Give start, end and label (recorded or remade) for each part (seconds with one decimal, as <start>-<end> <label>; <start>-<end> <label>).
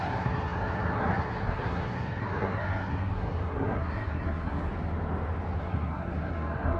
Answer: 0.0-4.7 remade; 4.7-5.6 recorded; 5.6-6.8 remade